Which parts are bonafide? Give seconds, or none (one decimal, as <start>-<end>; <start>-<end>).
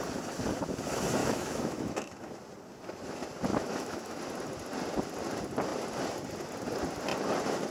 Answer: 0.0-1.2; 2.3-3.5; 4.2-7.7